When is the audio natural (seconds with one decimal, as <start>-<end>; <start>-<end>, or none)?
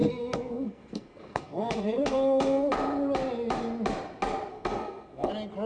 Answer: 2.7-4.5; 5.3-5.7